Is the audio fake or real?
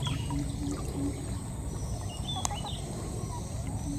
real